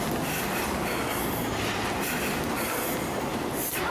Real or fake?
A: real